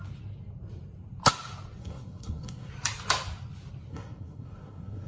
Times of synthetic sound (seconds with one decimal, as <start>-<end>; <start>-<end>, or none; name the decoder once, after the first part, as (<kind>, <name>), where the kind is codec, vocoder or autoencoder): 1.8-2.7 (codec, SNAC); 3.9-5.1